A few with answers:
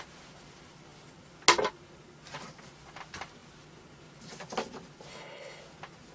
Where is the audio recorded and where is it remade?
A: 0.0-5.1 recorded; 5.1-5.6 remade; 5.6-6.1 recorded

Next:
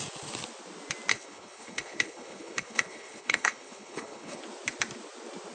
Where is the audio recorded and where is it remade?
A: 0.0-1.1 recorded; 1.1-4.4 remade; 4.4-5.5 recorded

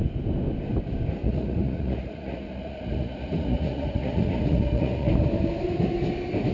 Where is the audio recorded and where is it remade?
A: 0.0-1.2 recorded; 1.2-5.1 remade; 5.1-6.5 recorded

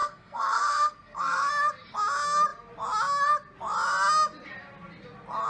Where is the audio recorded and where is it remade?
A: 0.0-1.5 remade; 1.5-5.5 recorded

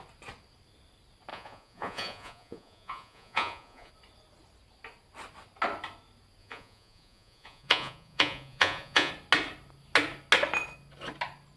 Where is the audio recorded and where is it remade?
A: 0.0-1.3 recorded; 1.3-3.9 remade; 3.9-6.4 recorded; 6.4-9.1 remade; 9.1-11.6 recorded

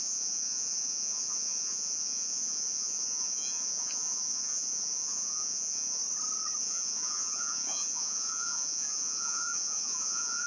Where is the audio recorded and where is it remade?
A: 0.0-6.0 remade; 6.0-6.6 recorded; 6.6-10.5 remade